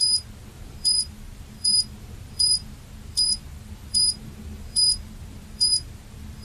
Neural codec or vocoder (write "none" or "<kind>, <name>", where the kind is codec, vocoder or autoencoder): vocoder, BigVGAN v2